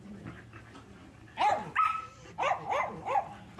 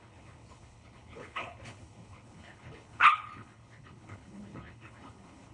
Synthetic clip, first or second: second